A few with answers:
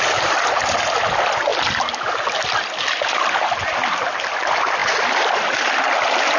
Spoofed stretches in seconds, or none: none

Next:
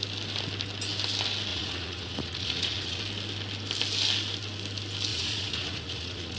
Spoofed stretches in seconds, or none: 1.5-3.0 (vocoder, Vocos); 5.1-6.4